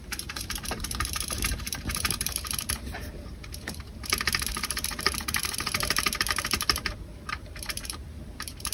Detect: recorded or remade remade